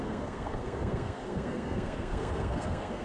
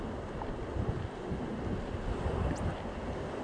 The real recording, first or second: second